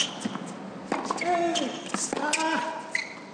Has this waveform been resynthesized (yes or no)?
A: no